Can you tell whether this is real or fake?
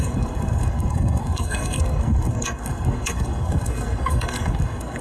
fake